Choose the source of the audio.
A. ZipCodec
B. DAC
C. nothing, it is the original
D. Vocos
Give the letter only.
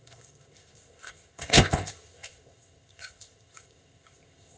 A